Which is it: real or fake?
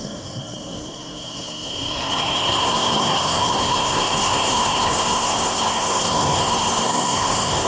fake